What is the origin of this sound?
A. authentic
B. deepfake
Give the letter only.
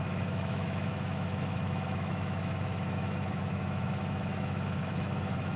B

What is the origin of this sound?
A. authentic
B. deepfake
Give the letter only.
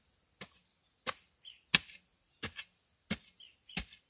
A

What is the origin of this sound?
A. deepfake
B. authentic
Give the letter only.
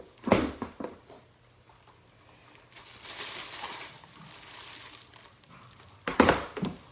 B